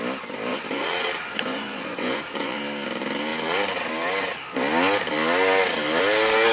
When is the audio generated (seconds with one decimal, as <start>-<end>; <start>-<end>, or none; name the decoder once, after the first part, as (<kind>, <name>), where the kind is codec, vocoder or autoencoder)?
0.5-2.6 (vocoder, Vocos)